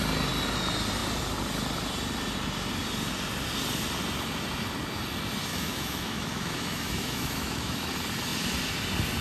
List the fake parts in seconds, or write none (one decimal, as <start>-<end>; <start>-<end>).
5.5-7.9